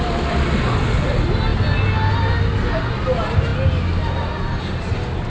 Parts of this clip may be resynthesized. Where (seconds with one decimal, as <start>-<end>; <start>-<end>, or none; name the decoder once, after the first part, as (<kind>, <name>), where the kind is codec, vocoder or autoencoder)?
none